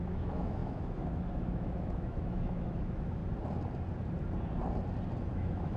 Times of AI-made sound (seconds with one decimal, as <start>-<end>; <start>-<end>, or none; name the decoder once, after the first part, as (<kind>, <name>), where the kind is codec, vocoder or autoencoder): 0.0-3.2 (autoencoder, DAC-VAE); 5.3-5.8